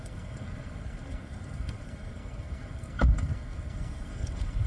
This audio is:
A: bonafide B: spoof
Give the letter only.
B